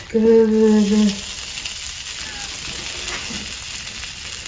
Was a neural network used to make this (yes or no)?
no